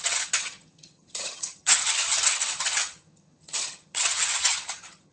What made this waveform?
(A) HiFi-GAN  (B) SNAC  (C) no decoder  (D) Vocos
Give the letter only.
A